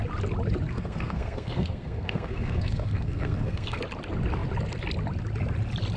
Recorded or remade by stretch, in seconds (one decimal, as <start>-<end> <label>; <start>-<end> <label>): 0.0-0.7 recorded; 0.7-3.8 remade; 3.8-6.0 recorded